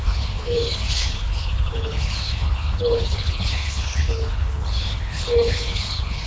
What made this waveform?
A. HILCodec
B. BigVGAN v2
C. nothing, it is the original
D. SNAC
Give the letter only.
A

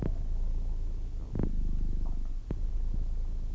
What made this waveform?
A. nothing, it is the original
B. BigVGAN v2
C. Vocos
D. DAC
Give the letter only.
A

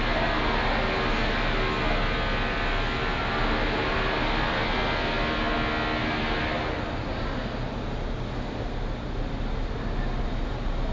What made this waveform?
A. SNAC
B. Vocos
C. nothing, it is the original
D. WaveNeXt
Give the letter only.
C